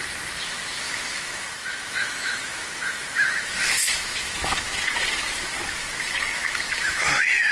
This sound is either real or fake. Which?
fake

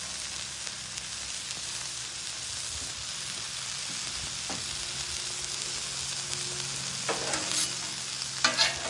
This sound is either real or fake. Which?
real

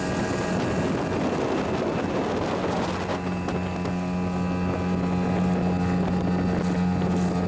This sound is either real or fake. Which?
real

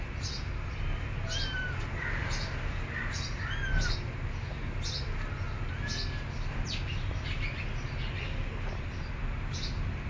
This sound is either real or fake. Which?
real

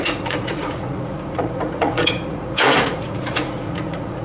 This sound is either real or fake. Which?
fake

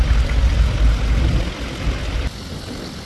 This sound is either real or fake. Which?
real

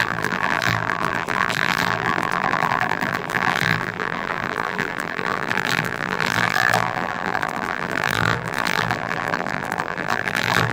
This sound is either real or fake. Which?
fake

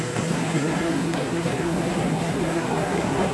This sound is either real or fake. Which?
fake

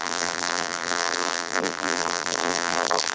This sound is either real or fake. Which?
fake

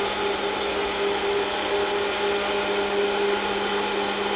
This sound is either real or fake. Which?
real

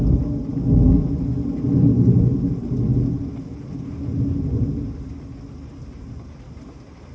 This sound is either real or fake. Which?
real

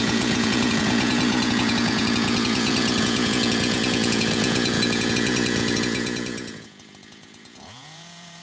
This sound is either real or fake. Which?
fake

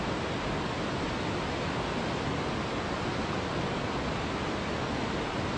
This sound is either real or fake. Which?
real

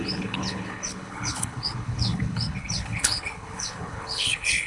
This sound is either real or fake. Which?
fake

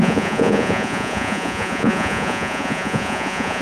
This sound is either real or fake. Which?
fake